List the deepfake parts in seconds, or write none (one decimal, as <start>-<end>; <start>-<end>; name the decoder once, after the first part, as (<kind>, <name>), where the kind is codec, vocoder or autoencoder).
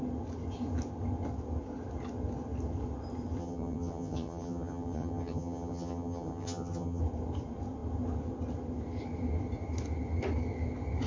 3.4-7.0 (vocoder, HiFi-GAN)